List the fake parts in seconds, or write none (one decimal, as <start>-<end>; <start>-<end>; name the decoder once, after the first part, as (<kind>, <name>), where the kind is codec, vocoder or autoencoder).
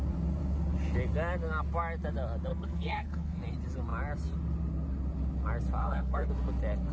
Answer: 2.5-3.4 (codec, SNAC); 5.8-6.3